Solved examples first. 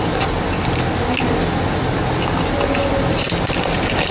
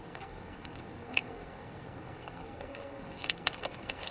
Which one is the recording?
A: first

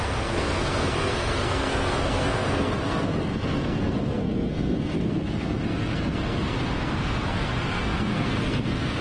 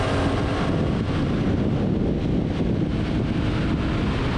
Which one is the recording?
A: second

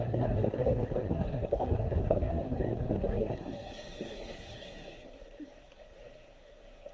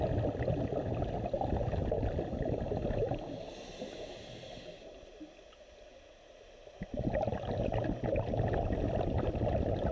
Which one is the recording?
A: second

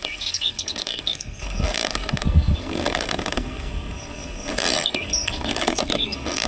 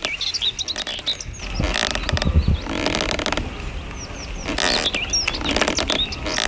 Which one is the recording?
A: second